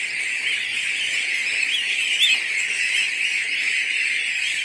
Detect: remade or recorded recorded